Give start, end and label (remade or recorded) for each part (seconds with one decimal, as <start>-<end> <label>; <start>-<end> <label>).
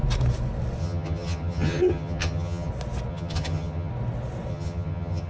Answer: 0.0-0.8 recorded; 0.8-2.7 remade; 2.7-3.1 recorded; 3.1-3.9 remade; 3.9-4.5 recorded; 4.5-5.3 remade